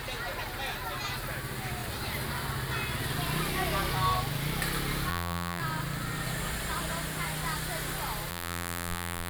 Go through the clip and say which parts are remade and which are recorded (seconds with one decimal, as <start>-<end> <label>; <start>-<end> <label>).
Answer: 0.0-5.1 recorded; 5.1-5.6 remade; 5.6-8.3 recorded; 8.3-9.3 remade